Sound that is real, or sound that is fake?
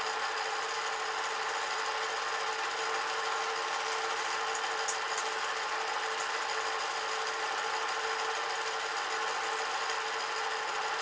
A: real